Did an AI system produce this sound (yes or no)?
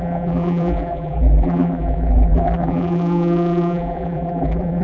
yes